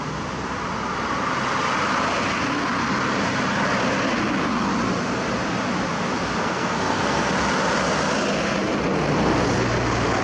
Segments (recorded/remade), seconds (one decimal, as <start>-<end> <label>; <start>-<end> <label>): 0.0-6.4 recorded; 6.4-7.3 remade; 7.3-10.2 recorded